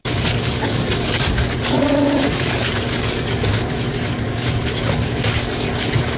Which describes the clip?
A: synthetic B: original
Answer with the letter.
A